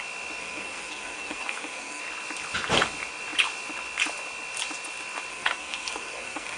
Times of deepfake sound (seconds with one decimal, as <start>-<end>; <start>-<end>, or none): 0.4-2.0; 5.3-6.6